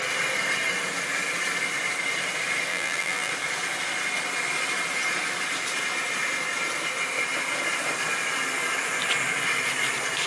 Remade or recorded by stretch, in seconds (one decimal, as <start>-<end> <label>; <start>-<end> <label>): 0.0-2.7 recorded; 2.7-3.3 remade; 3.3-10.3 recorded